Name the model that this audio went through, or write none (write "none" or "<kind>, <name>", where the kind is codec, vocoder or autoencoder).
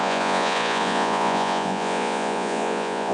vocoder, Vocos